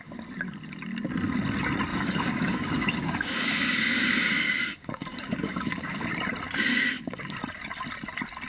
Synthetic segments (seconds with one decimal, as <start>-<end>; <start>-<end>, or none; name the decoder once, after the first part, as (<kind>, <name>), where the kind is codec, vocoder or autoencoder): 1.9-6.1 (codec, DAC); 6.7-7.4